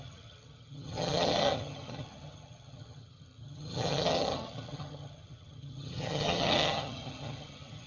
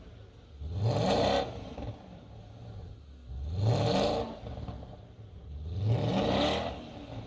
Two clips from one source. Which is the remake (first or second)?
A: first